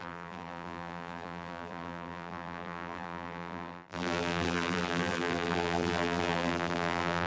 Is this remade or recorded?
remade